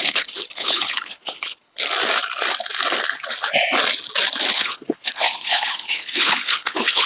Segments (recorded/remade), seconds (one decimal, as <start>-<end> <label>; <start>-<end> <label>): 0.0-1.8 remade; 1.8-4.5 recorded; 4.5-7.1 remade